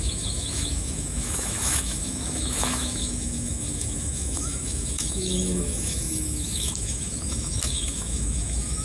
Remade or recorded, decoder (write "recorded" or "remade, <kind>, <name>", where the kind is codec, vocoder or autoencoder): remade, autoencoder, DAC-VAE